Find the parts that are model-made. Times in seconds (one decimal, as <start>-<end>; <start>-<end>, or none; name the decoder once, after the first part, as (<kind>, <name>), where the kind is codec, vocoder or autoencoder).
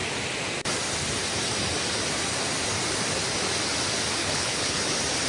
4.2-4.8 (codec, HILCodec)